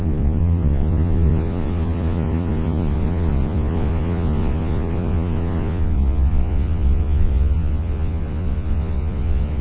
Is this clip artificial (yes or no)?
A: yes